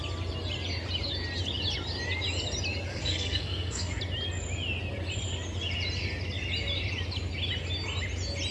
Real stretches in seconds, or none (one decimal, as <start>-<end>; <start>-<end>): 0.0-2.9; 4.0-8.5